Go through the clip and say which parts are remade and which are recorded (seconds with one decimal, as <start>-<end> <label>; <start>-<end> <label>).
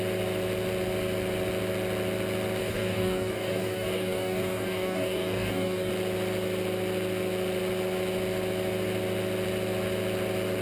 0.0-2.6 recorded; 2.6-5.9 remade; 5.9-10.6 recorded